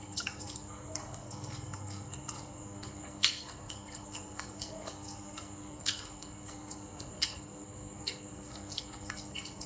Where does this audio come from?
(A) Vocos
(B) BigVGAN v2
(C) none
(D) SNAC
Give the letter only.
D